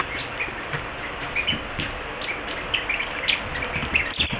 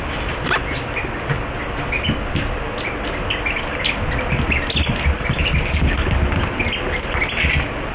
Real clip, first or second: second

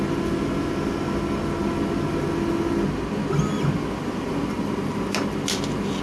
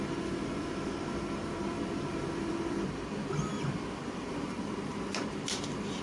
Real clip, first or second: first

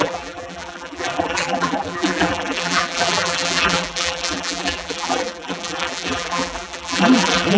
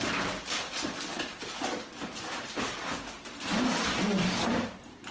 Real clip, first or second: second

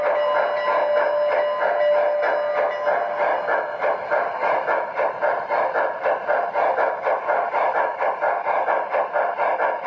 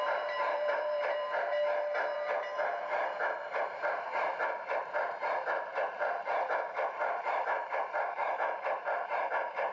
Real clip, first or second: first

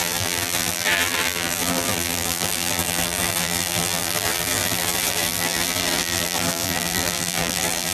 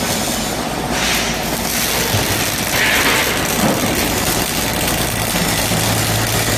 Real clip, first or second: second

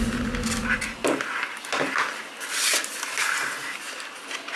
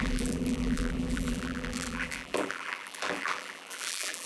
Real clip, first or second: first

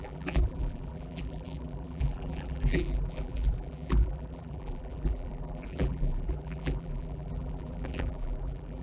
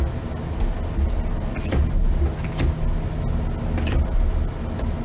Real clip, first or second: second